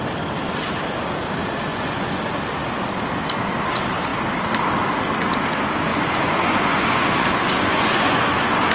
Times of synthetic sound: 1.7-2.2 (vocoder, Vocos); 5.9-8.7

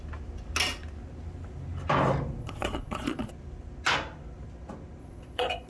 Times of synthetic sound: 2.4-3.3 (vocoder, Vocos); 5.0-5.7